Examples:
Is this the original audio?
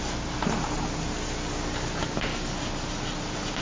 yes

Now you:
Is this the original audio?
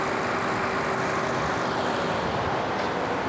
yes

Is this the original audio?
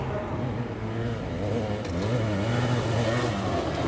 yes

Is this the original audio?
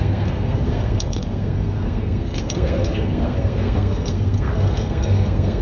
no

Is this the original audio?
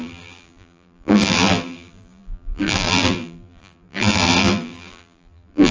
no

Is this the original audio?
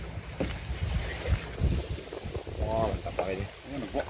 yes